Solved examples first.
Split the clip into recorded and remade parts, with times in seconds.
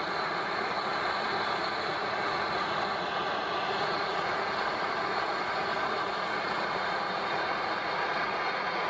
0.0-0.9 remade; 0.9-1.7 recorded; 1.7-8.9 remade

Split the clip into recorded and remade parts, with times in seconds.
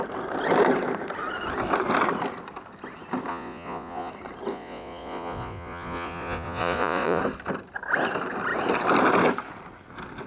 0.0-3.3 recorded; 3.3-4.1 remade; 4.1-4.5 recorded; 4.5-7.2 remade; 7.2-10.3 recorded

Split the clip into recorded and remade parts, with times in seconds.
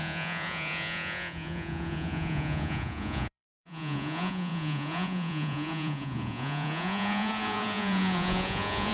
0.0-8.9 remade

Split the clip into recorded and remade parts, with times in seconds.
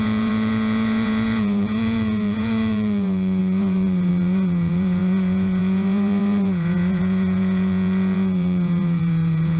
0.0-9.6 remade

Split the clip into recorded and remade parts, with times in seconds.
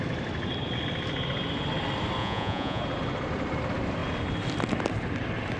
0.0-2.2 recorded; 2.2-2.8 remade; 2.8-5.6 recorded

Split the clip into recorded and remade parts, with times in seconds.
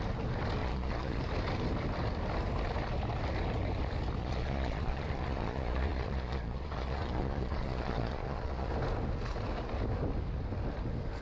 0.0-0.6 recorded; 0.6-1.2 remade; 1.2-4.2 recorded; 4.2-8.7 remade; 8.7-11.2 recorded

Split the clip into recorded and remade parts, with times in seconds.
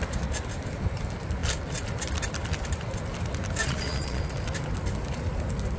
0.0-3.6 recorded; 3.6-4.2 remade; 4.2-5.8 recorded